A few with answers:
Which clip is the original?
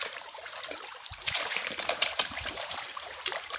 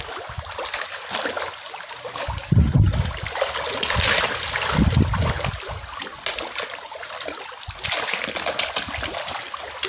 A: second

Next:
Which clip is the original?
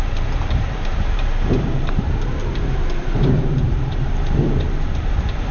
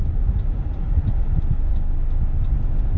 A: second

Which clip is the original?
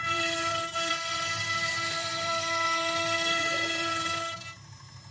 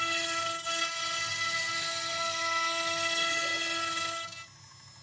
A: second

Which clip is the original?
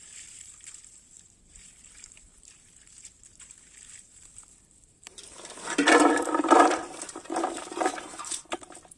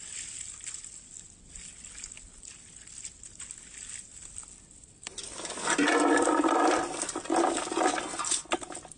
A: second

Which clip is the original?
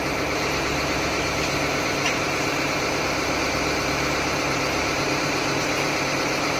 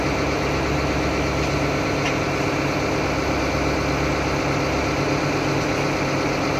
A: second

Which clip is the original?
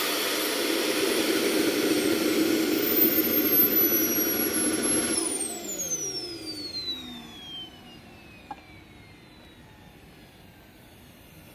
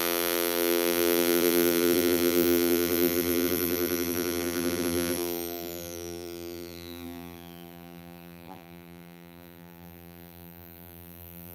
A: first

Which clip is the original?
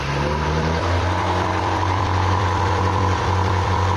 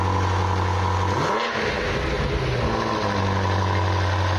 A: second